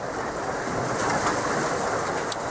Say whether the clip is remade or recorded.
recorded